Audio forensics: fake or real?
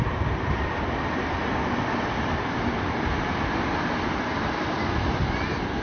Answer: real